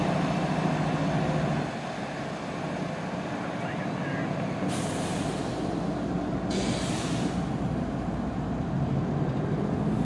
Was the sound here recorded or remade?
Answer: recorded